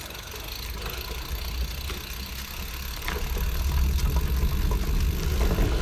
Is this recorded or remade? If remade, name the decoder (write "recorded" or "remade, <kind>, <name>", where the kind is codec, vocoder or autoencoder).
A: recorded